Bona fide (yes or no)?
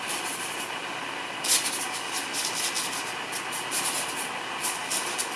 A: yes